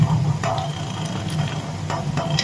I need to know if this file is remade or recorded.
remade